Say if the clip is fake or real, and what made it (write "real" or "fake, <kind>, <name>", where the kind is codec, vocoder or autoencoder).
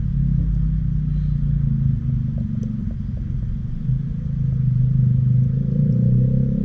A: real